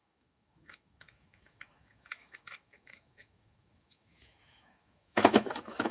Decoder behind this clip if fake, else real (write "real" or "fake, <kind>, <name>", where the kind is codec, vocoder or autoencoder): fake, autoencoder, DAC-VAE